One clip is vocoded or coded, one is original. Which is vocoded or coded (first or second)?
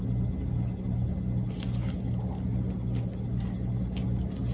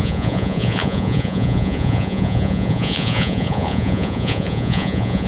second